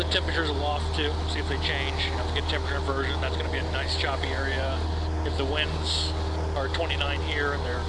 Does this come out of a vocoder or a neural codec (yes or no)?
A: no